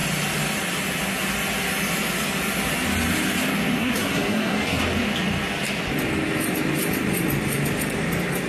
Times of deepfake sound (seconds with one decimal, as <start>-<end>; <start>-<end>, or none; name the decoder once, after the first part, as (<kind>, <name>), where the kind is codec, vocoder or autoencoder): 3.8-4.8 (codec, SNAC)